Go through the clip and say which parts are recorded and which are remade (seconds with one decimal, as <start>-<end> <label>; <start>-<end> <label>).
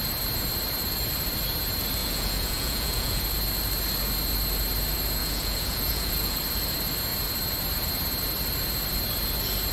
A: 0.0-2.0 recorded; 2.0-3.2 remade; 3.2-5.2 recorded; 5.2-6.4 remade; 6.4-9.7 recorded